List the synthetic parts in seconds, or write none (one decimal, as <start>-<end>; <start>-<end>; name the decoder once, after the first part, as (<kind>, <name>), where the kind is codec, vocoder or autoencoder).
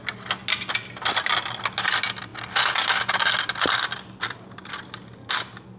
none